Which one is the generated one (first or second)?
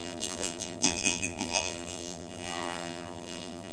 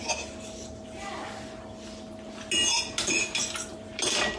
first